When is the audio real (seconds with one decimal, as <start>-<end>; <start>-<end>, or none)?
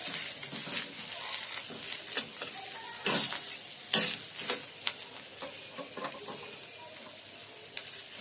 0.0-8.2